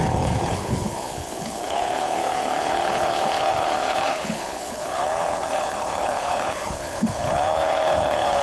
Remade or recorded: remade